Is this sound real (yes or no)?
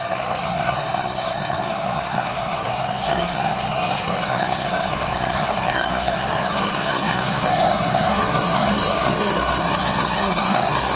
no